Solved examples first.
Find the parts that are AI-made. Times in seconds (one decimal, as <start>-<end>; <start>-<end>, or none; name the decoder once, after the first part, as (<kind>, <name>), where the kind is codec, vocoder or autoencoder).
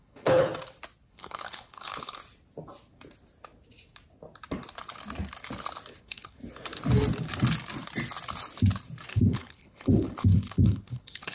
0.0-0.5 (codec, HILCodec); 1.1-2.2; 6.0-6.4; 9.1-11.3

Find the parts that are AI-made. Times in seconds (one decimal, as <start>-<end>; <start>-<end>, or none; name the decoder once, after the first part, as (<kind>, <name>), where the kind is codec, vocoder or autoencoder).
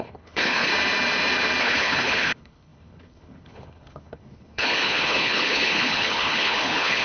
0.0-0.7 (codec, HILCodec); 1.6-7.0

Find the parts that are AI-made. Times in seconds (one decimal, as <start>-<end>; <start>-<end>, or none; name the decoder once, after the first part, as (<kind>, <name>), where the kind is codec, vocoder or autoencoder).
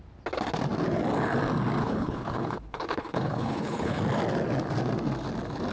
1.8-4.0 (codec, HILCodec)